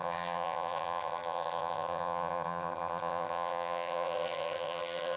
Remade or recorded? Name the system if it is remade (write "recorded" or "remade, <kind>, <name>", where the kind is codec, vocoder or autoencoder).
remade, vocoder, HiFi-GAN